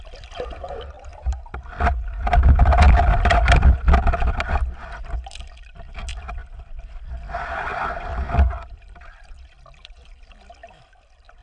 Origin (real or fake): fake